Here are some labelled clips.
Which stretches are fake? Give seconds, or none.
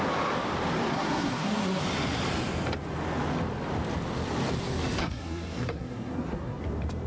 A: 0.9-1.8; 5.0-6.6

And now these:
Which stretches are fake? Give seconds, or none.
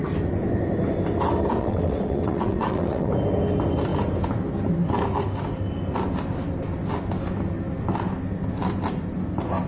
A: 1.6-3.1